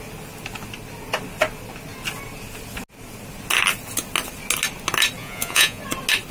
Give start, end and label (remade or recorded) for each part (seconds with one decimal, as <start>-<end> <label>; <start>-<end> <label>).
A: 0.0-5.2 recorded; 5.2-5.8 remade; 5.8-6.3 recorded